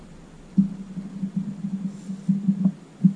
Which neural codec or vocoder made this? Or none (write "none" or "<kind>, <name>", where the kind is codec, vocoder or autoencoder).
none